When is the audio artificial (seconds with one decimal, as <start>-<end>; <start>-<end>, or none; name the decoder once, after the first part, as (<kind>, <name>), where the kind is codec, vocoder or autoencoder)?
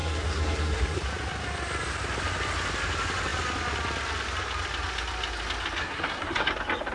0.0-1.0 (codec, SNAC); 5.8-6.5